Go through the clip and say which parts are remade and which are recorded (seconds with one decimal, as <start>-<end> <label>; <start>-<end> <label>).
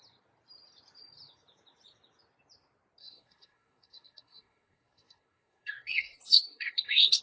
0.0-3.0 recorded; 3.0-7.2 remade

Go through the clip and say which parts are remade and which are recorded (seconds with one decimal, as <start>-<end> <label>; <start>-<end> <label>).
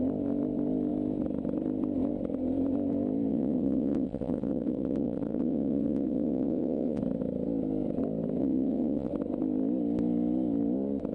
0.0-3.3 recorded; 3.3-7.0 remade; 7.0-8.4 recorded; 8.4-9.1 remade; 9.1-11.1 recorded